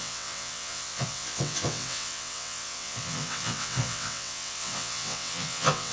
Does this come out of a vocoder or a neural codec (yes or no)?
yes